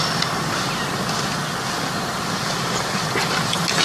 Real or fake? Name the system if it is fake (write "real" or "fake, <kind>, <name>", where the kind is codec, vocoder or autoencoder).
real